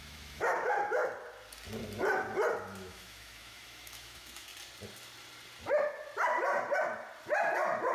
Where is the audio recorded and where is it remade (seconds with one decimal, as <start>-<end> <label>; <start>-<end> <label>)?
0.0-1.0 remade; 1.0-2.6 recorded; 2.6-4.5 remade; 4.5-7.9 recorded